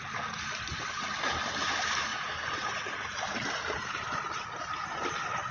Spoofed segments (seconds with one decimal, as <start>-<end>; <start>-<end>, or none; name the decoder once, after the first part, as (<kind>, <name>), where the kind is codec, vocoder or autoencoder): 2.1-5.5 (vocoder, BigVGAN v2)